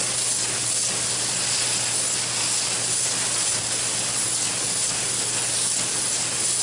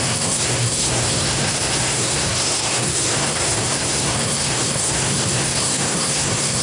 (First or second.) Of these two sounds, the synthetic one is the second